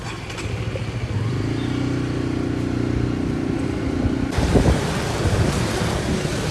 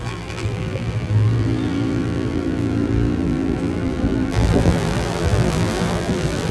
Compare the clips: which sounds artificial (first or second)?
second